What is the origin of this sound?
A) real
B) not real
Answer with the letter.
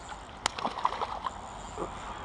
A